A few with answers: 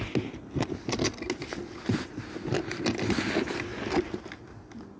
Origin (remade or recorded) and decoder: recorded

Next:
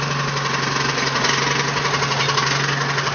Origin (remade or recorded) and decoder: recorded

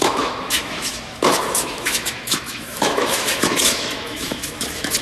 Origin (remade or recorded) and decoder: remade, autoencoder, DAC-VAE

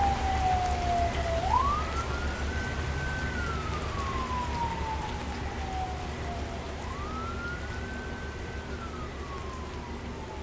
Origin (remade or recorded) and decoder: recorded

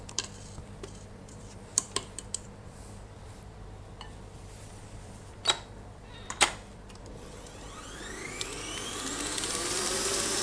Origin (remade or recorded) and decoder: remade, vocoder, BigVGAN v2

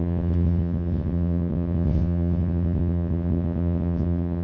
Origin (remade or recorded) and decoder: remade, vocoder, WaveNeXt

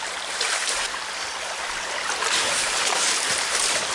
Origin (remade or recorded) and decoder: recorded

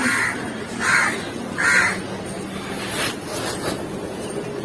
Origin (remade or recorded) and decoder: recorded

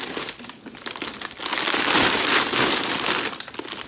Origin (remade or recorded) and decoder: recorded